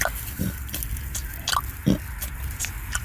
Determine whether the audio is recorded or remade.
recorded